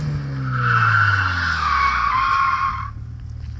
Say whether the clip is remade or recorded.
recorded